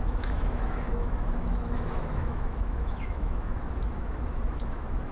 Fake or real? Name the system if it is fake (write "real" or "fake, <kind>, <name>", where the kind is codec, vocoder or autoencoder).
fake, autoencoder, DAC-VAE